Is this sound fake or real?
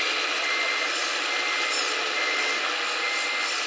real